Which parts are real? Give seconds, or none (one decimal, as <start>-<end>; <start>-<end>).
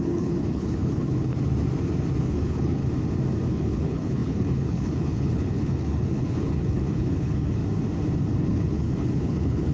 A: 1.3-2.2; 2.8-3.5; 7.6-8.4